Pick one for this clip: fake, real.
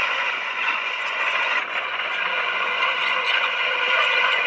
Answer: fake